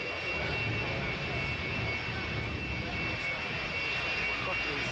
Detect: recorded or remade recorded